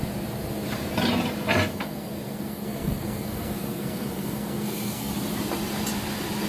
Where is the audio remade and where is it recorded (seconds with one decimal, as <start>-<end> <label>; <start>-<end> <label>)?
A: 0.0-1.7 recorded; 1.7-5.1 remade; 5.1-6.5 recorded